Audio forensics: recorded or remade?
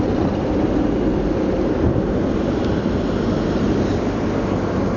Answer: recorded